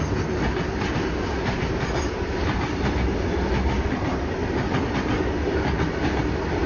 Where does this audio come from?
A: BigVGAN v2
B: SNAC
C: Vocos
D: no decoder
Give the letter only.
D